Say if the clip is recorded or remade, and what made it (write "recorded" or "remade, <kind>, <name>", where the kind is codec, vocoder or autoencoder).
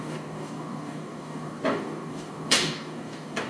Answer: remade, codec, DAC